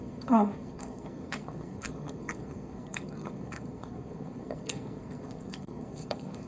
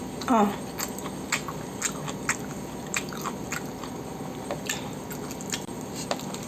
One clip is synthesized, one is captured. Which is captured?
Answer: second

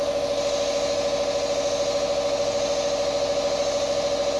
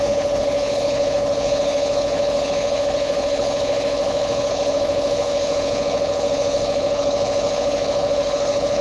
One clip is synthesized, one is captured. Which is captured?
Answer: first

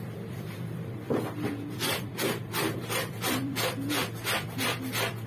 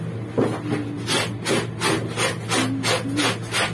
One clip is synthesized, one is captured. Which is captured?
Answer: second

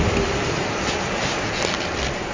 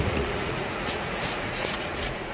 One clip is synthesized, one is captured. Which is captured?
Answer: first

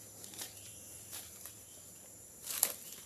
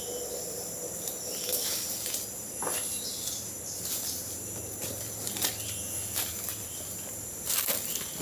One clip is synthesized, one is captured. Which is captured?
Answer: second